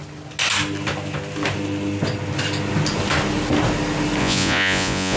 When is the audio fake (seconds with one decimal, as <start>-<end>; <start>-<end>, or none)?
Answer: 4.2-5.2